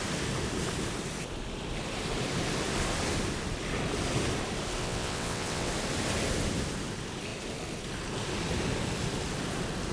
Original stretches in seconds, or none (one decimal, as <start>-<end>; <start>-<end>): 0.0-4.8; 5.7-9.9

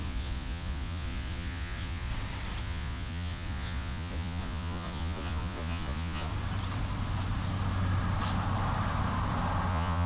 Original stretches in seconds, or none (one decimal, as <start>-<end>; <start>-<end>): 2.1-2.6; 6.3-9.7

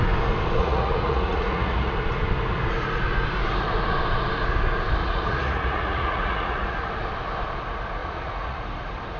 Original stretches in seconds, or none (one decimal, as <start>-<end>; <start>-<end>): 0.0-0.6; 1.9-5.0; 6.9-8.0; 8.6-9.2

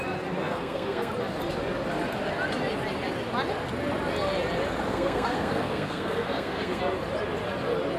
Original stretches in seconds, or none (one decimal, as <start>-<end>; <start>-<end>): 0.0-0.4; 1.1-4.9; 6.8-8.0